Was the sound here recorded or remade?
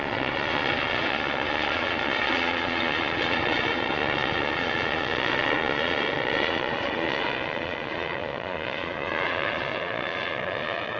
remade